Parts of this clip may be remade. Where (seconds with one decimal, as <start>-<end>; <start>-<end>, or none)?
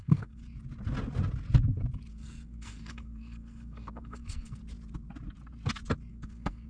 0.0-0.4; 2.1-4.6; 6.1-6.7